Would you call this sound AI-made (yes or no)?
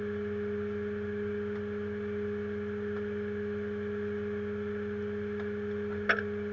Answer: no